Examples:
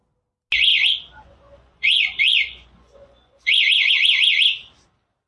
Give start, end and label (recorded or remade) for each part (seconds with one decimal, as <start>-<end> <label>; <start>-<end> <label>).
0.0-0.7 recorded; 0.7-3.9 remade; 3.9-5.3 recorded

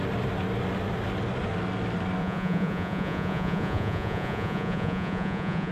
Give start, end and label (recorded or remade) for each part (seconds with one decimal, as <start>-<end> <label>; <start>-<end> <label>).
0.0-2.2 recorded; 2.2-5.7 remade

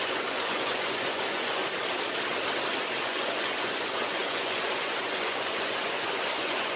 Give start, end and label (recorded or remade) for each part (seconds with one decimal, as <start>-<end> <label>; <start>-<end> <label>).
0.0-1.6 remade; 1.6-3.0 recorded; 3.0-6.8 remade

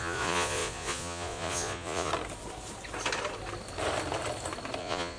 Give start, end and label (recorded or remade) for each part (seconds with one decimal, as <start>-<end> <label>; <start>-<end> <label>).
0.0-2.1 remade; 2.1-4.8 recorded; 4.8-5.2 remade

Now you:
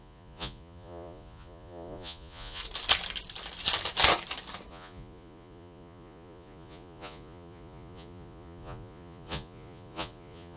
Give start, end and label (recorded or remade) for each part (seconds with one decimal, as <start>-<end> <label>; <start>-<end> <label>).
0.0-2.6 remade; 2.6-4.7 recorded; 4.7-10.6 remade